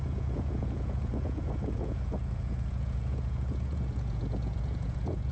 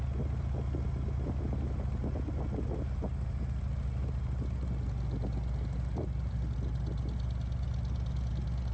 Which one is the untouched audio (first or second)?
second